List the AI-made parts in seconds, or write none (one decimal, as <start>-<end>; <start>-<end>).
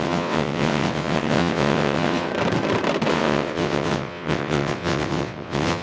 0.0-2.3; 3.1-5.8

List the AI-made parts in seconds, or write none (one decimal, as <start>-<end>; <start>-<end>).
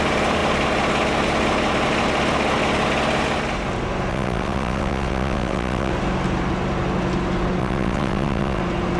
4.1-5.9; 7.6-8.6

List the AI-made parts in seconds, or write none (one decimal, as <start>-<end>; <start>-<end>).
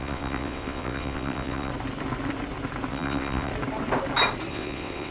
0.0-1.7; 2.9-3.5; 4.5-5.1